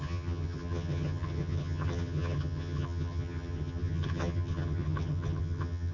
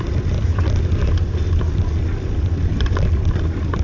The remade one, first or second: first